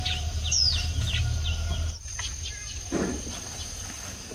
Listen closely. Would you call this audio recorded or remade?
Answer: recorded